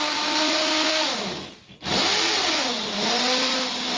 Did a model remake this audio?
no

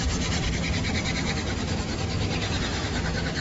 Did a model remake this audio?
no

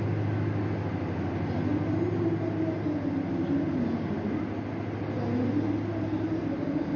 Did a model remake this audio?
no